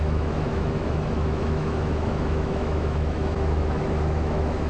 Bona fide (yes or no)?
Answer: no